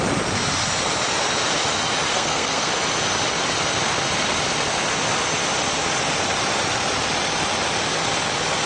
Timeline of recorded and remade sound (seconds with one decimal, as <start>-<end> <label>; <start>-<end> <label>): 0.0-2.1 recorded; 2.1-2.7 remade; 2.7-8.7 recorded